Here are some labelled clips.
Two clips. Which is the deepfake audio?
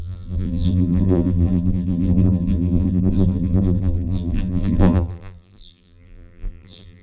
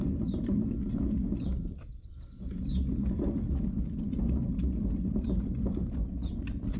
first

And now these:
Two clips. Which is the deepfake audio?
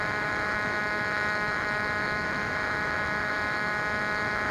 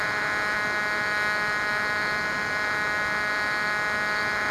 first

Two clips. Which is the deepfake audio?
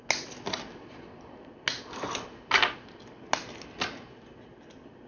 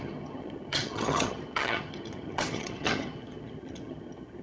second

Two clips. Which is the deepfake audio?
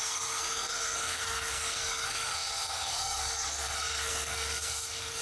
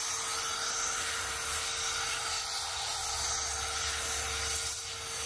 first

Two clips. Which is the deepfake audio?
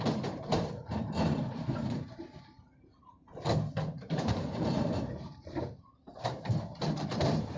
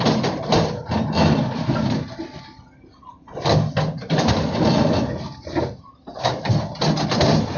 first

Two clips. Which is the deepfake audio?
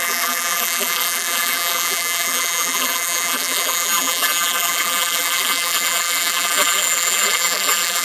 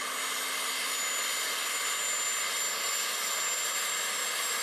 first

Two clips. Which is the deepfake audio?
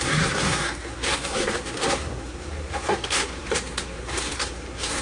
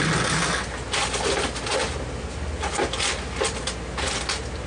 first